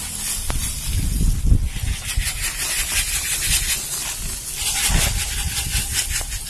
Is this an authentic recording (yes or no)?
yes